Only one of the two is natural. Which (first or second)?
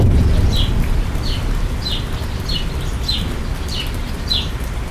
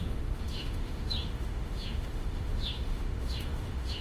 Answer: first